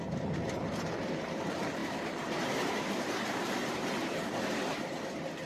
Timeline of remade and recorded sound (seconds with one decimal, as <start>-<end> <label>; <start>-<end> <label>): 0.0-5.5 recorded

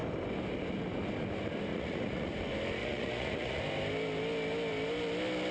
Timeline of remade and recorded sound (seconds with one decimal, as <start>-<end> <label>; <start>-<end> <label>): 0.0-1.7 recorded; 1.7-2.3 remade; 2.3-2.8 recorded; 2.8-3.6 remade; 3.6-5.5 recorded

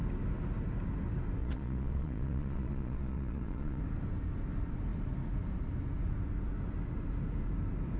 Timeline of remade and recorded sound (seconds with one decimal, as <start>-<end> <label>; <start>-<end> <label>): 0.0-1.4 recorded; 1.4-3.8 remade; 3.8-8.0 recorded

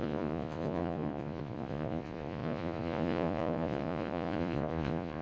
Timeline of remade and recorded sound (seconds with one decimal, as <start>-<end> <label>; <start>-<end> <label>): 0.0-5.2 remade

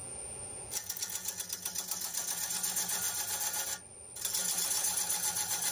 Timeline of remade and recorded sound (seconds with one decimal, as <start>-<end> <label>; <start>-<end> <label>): 0.0-1.4 remade; 1.4-5.7 recorded

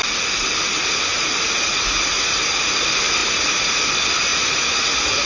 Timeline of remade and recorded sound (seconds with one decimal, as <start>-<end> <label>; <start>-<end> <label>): 0.0-1.1 recorded; 1.1-2.4 remade; 2.4-3.2 recorded; 3.2-3.8 remade; 3.8-4.3 recorded; 4.3-5.3 remade

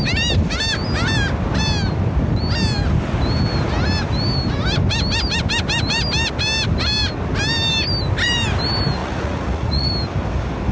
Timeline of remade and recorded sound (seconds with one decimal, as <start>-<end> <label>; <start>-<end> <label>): 0.0-9.0 recorded; 9.0-9.9 remade; 9.9-10.7 recorded